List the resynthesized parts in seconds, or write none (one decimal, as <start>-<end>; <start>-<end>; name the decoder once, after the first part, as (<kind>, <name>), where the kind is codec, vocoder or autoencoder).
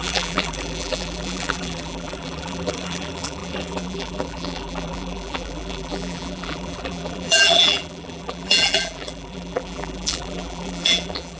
0.0-11.4 (vocoder, BigVGAN v2)